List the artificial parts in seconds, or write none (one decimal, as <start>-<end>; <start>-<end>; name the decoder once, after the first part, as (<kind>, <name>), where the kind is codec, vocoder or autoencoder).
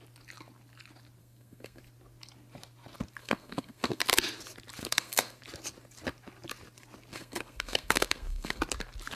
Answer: 1.2-1.8 (codec, SNAC); 3.2-4.0; 4.8-5.4; 7.1-8.6